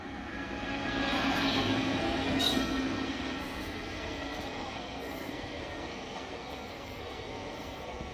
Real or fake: fake